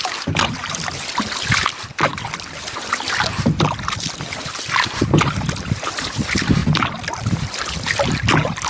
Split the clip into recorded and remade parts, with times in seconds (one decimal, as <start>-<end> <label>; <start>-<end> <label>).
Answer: 0.0-8.7 recorded